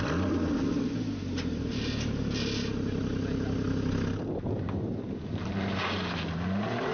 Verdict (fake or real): real